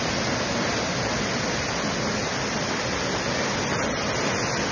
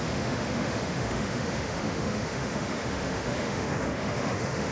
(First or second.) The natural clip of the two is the first